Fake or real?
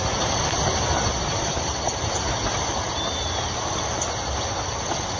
real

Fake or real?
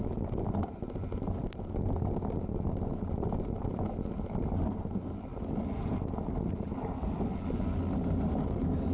real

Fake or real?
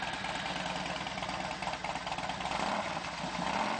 real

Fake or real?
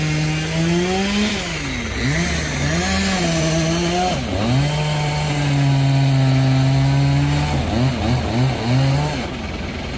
real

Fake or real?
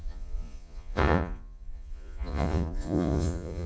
fake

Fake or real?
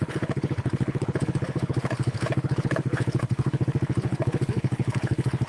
fake